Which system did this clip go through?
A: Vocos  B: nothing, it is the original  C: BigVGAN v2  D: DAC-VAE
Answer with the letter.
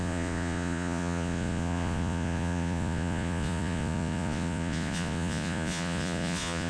A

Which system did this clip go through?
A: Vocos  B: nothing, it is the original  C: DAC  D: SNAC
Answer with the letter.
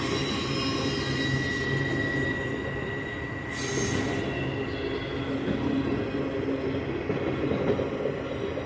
B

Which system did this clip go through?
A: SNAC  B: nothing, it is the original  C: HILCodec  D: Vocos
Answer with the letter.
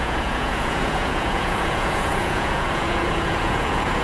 D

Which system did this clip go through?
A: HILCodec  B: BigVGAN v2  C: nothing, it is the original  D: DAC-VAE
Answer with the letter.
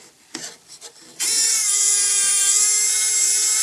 C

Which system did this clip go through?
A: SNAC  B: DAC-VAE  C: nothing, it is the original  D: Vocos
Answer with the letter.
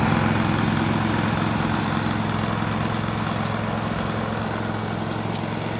C